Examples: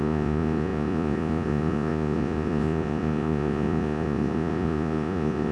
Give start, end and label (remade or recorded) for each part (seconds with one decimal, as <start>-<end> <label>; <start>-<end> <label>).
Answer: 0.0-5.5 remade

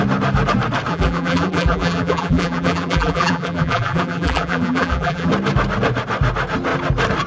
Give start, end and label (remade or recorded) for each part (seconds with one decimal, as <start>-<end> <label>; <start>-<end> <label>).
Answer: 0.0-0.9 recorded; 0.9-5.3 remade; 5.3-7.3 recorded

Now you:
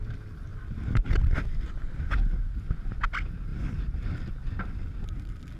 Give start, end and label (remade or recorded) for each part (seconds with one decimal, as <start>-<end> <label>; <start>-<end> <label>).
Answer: 0.0-0.5 recorded; 0.5-1.7 remade; 1.7-5.6 recorded

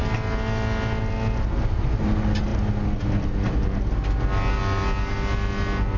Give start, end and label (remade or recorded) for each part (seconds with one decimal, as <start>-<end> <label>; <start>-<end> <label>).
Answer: 0.0-6.0 recorded

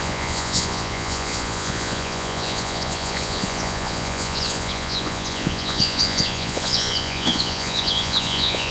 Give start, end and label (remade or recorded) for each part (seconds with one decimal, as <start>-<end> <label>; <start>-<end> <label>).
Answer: 0.0-8.7 remade